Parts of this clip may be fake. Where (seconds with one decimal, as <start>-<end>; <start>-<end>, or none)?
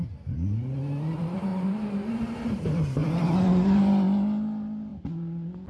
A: 1.5-2.1